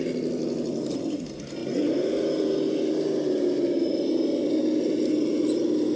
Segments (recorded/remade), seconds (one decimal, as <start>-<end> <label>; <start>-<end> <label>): 0.0-6.0 recorded